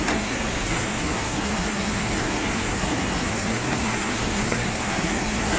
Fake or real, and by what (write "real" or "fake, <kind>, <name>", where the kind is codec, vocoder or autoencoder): fake, codec, SNAC